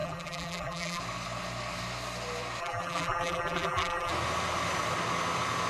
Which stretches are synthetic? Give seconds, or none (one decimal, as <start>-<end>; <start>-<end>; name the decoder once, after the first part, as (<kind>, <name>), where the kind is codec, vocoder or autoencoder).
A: 0.0-1.0 (vocoder, BigVGAN v2); 2.6-4.1